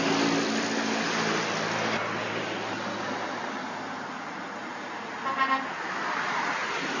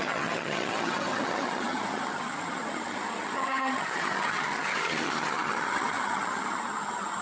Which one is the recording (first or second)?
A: first